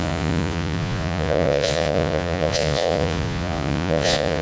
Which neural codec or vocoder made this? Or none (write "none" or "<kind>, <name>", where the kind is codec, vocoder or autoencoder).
vocoder, Vocos